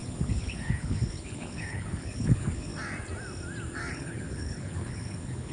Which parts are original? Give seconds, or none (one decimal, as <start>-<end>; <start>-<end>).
2.7-3.9